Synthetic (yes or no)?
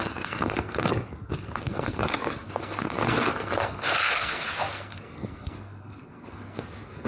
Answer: yes